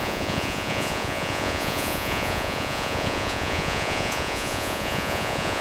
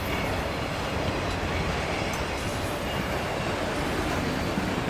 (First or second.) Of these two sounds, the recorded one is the second